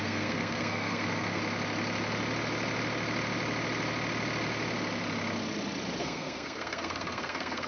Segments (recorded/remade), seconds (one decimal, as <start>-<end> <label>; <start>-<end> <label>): 0.0-1.4 remade; 1.4-6.0 recorded; 6.0-7.7 remade